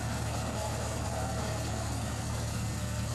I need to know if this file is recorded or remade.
remade